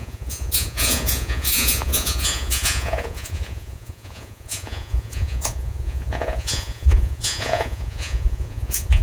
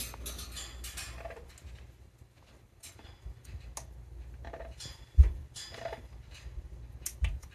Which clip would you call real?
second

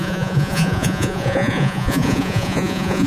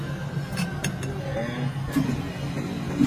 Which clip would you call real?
second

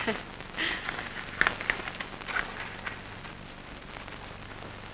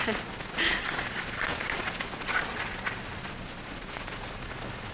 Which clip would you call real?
first